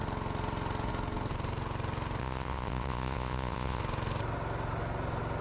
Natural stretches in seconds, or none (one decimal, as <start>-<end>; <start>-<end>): 0.0-2.2; 3.8-5.4